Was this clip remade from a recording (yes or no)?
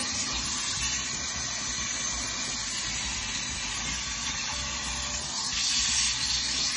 no